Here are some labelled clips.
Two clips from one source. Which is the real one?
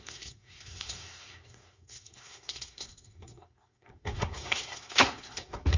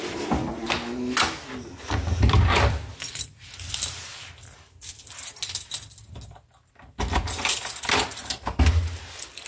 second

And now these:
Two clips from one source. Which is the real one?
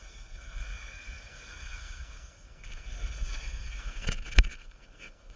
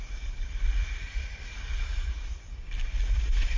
second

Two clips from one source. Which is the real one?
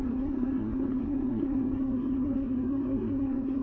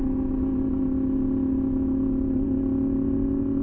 second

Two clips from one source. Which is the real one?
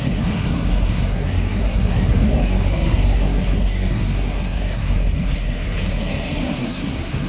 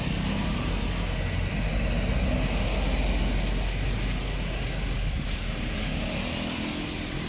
second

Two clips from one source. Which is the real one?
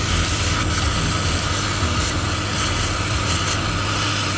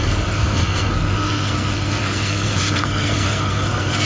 first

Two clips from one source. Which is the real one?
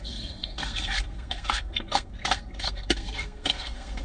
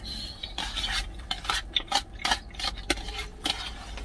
second